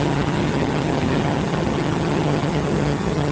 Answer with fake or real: fake